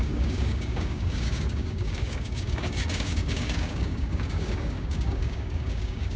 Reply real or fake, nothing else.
fake